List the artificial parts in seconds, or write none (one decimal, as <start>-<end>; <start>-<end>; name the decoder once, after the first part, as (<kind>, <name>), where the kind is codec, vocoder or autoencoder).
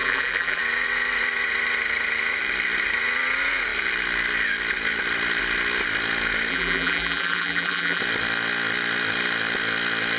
0.0-0.6 (vocoder, BigVGAN v2); 6.5-8.0